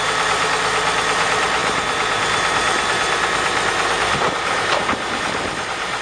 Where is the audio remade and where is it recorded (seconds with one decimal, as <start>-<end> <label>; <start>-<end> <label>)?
0.0-6.0 remade